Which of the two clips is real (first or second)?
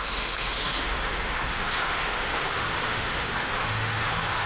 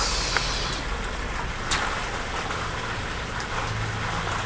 second